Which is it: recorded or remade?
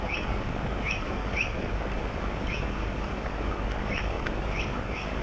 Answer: remade